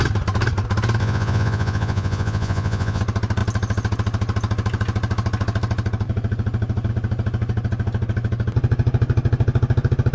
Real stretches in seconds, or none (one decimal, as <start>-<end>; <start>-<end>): 0.0-1.0; 3.0-10.1